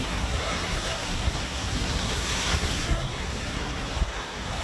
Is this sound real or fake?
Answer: fake